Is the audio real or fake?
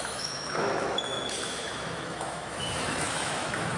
fake